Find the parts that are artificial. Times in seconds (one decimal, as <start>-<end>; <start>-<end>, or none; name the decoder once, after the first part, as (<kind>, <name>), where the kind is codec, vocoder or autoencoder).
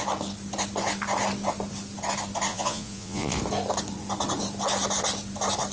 2.5-3.4 (vocoder, Vocos)